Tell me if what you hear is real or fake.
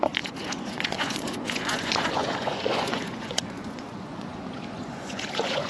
fake